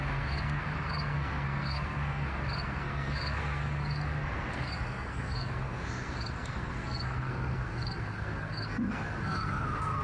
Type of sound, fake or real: fake